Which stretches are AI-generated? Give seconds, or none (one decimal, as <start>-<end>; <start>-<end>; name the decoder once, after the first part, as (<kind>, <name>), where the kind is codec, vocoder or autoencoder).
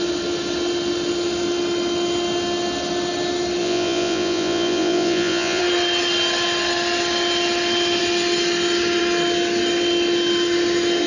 3.6-5.6 (vocoder, Vocos)